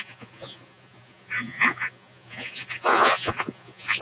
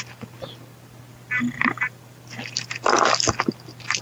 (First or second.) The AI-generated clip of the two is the first